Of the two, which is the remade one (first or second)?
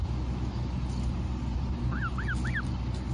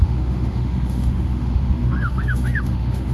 second